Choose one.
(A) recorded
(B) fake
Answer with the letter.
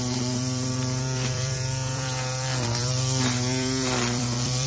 B